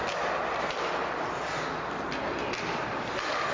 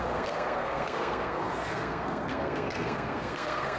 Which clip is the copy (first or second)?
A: second